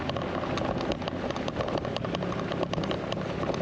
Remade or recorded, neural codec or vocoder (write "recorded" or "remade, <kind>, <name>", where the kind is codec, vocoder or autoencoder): recorded